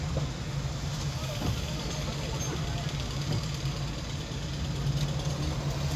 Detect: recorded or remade recorded